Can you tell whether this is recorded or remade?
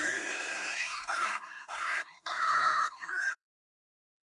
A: remade